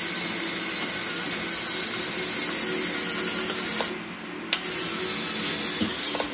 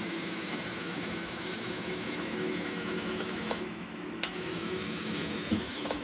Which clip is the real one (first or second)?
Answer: first